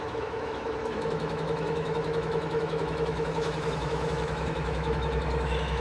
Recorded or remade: remade